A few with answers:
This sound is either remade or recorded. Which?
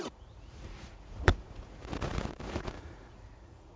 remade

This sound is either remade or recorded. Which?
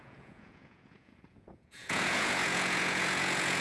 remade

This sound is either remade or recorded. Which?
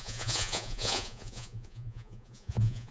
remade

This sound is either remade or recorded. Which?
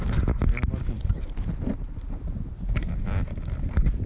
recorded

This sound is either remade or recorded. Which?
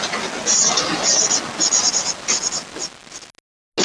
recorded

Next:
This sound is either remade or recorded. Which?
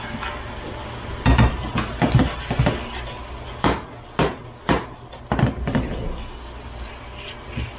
recorded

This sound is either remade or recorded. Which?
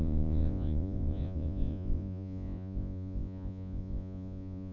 remade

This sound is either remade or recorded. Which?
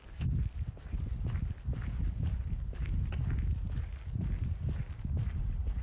recorded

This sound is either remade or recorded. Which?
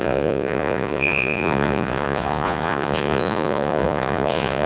remade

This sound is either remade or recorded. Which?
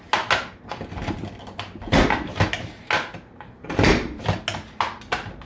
recorded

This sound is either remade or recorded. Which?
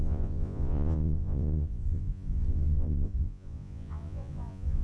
remade